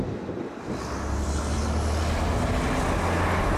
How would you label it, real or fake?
real